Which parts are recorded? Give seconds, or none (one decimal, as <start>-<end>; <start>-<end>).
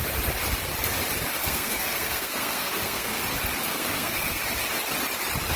0.0-1.4; 3.2-3.6; 4.4-5.6